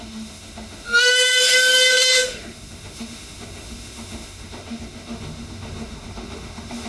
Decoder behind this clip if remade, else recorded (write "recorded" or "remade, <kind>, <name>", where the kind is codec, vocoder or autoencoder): remade, autoencoder, DAC-VAE